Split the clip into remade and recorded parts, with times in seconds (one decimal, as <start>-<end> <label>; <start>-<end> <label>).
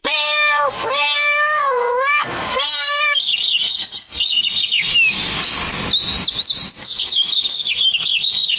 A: 0.0-4.9 remade; 4.9-6.8 recorded; 6.8-8.6 remade